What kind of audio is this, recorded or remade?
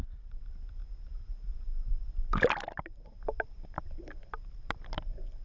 recorded